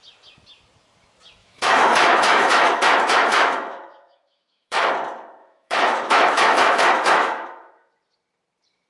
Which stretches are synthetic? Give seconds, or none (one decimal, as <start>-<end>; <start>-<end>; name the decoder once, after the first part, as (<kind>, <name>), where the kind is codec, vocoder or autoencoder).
1.4-4.9 (autoencoder, DAC-VAE); 5.4-7.9